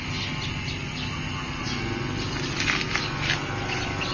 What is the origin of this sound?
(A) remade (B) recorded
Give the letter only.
B